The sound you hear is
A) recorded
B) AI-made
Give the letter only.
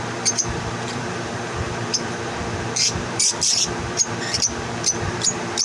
B